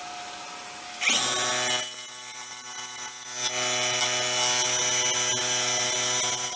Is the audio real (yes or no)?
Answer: yes